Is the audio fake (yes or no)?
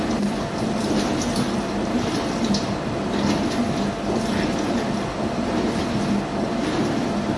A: no